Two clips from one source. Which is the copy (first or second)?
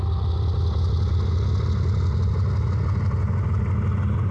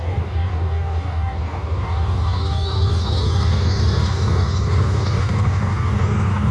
second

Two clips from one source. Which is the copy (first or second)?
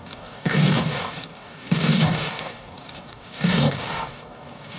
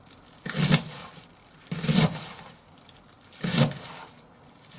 first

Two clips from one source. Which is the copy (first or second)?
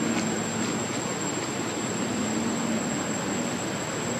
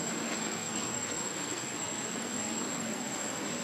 second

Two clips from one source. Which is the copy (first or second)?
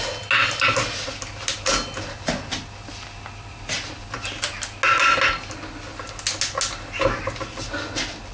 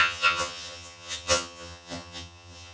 second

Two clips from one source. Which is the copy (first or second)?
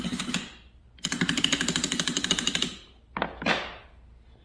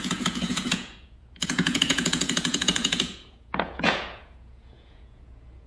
second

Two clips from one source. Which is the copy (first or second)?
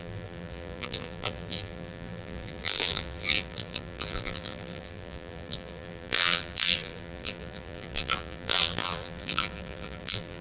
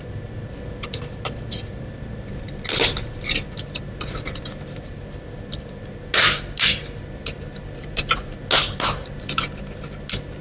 first